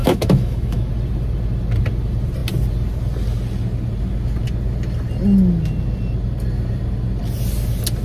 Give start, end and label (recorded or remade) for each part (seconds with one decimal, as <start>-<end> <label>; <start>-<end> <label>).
0.0-0.9 remade; 0.9-8.0 recorded